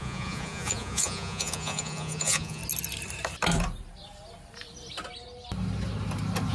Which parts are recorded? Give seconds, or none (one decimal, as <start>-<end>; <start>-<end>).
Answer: 2.6-6.5